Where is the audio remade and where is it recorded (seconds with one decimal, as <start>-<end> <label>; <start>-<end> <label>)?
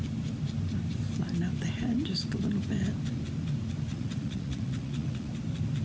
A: 0.0-3.9 recorded; 3.9-5.3 remade; 5.3-5.8 recorded